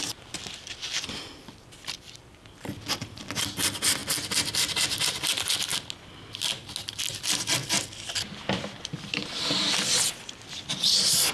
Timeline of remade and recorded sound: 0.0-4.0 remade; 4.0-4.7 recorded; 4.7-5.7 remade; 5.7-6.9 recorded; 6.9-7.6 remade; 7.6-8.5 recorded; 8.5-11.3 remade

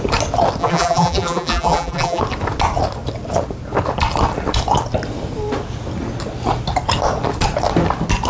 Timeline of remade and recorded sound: 0.0-0.6 recorded; 0.6-2.2 remade; 2.2-8.3 recorded

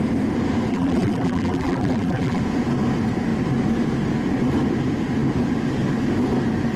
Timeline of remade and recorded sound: 0.0-0.7 recorded; 0.7-2.4 remade; 2.4-6.8 recorded

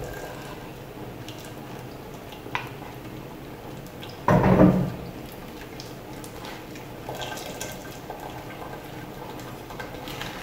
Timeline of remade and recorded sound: 0.0-7.8 recorded; 7.8-8.5 remade; 8.5-10.4 recorded

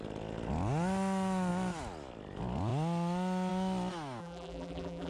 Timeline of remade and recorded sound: 0.0-4.2 recorded; 4.2-5.1 remade